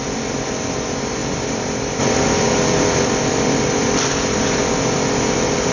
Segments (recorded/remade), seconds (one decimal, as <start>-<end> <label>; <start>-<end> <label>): 0.0-1.2 recorded; 1.2-4.6 remade; 4.6-5.7 recorded